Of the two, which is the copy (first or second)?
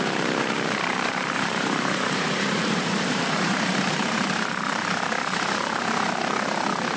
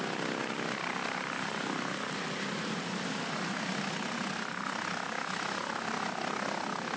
first